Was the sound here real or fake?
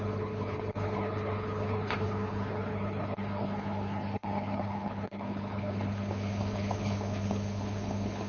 fake